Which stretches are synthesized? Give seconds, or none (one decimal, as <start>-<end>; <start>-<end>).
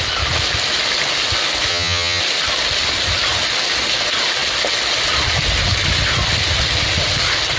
1.7-2.2